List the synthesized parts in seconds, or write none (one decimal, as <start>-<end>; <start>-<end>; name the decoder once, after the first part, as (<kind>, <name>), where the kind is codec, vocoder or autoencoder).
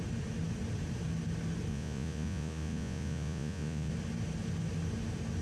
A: 1.7-3.9 (vocoder, Vocos)